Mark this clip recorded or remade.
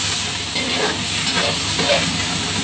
recorded